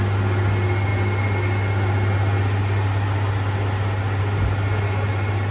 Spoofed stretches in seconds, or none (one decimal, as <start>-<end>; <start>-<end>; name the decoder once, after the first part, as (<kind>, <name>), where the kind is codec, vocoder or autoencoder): none